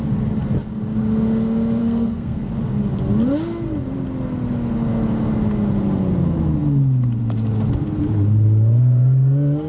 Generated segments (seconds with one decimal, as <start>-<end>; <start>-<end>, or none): 1.8-2.5